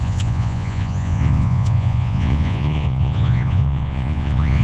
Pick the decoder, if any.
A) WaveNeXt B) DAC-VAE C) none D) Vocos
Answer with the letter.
D